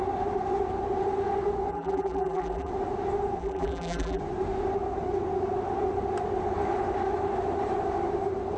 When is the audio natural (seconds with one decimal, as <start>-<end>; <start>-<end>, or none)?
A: 0.0-1.7; 2.7-3.4; 4.2-8.6